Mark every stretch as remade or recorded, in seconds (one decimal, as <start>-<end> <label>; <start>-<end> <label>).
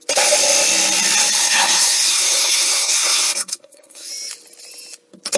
0.0-1.4 recorded; 1.4-4.1 remade; 4.1-5.4 recorded